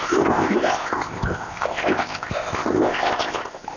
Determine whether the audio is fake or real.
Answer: fake